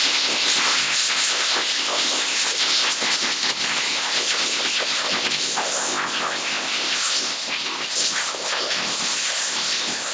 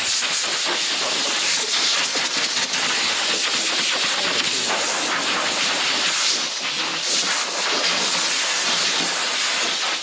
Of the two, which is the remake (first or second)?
first